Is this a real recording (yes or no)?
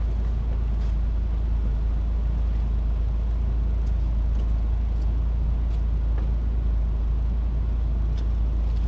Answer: yes